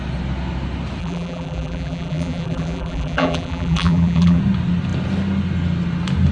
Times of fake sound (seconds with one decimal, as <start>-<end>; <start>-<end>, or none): 1.0-4.4

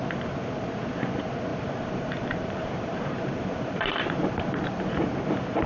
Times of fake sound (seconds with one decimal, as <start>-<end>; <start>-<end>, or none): 1.5-4.9